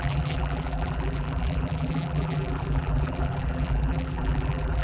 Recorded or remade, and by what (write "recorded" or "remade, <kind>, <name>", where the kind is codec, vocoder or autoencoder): remade, vocoder, BigVGAN v2